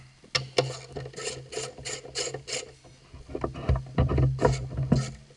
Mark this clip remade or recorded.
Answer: recorded